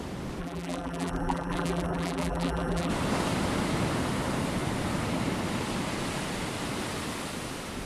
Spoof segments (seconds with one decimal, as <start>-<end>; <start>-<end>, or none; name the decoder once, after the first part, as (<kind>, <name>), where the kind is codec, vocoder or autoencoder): 0.4-2.9 (vocoder, BigVGAN v2)